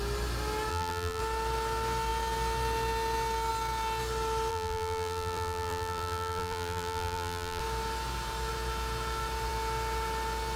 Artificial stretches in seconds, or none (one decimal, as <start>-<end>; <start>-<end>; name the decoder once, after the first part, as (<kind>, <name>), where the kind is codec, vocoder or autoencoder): 0.7-1.2 (vocoder, BigVGAN v2); 4.5-7.6

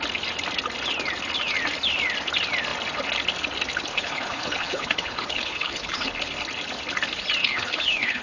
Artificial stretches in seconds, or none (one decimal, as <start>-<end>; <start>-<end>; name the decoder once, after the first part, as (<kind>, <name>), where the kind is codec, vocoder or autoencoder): 3.9-6.1 (codec, HILCodec); 7.4-8.2

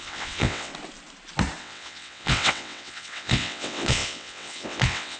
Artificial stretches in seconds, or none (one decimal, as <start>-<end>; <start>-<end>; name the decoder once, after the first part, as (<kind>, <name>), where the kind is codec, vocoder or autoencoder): 0.0-0.7 (vocoder, WaveNeXt); 1.6-5.2

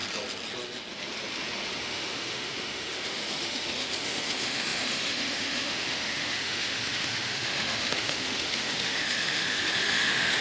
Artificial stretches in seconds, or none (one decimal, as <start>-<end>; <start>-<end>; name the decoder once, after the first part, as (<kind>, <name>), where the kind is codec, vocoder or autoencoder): 1.8-10.4 (autoencoder, DAC-VAE)

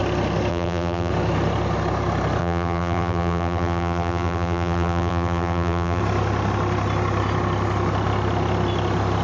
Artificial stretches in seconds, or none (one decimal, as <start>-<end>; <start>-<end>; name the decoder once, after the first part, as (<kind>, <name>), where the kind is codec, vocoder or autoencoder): 0.5-1.1 (vocoder, BigVGAN v2); 2.4-6.0

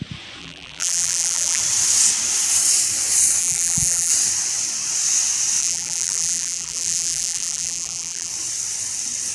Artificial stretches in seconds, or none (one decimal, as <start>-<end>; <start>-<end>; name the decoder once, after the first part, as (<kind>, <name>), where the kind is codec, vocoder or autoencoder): 0.4-1.6 (vocoder, BigVGAN v2); 3.4-4.1; 5.6-8.3